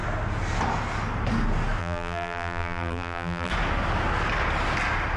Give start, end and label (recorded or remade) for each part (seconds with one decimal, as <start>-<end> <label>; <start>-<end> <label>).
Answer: 0.0-1.8 recorded; 1.8-3.5 remade; 3.5-5.2 recorded